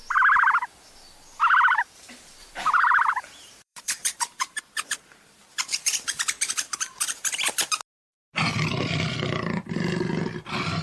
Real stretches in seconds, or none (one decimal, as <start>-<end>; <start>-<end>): 0.0-2.4; 4.6-10.8